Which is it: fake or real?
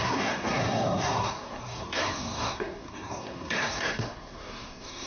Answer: fake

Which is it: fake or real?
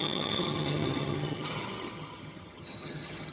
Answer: fake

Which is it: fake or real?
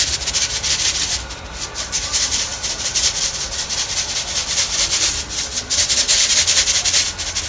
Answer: fake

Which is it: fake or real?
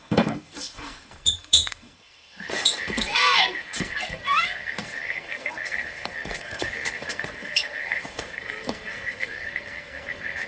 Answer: fake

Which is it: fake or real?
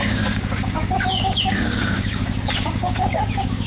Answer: fake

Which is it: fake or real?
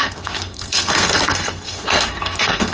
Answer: fake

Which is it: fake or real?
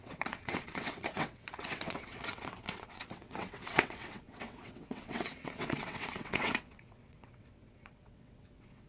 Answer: fake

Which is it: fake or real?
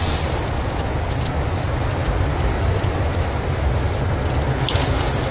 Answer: real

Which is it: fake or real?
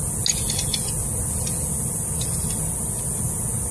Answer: real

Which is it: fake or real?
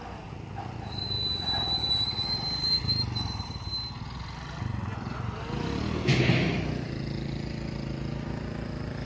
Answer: real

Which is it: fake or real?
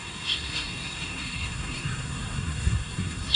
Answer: fake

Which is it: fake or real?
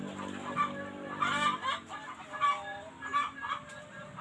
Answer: real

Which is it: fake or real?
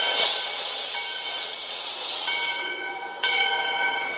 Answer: fake